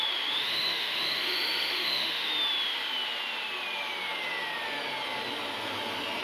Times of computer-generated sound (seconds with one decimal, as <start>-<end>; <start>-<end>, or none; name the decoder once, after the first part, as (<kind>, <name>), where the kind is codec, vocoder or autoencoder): 0.0-2.3 (autoencoder, DAC-VAE)